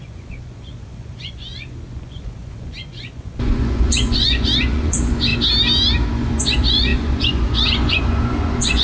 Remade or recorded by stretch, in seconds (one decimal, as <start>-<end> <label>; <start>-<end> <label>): 0.0-5.3 remade; 5.3-6.1 recorded; 6.1-8.8 remade